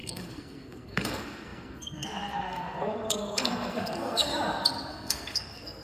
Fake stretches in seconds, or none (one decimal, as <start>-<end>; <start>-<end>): 0.0-4.3; 4.9-5.8